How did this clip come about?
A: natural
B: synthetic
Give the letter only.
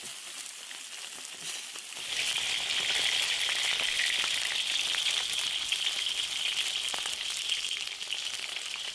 A